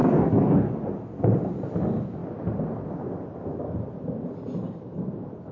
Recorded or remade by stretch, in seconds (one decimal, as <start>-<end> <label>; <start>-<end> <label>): 0.0-0.7 remade; 0.7-5.5 recorded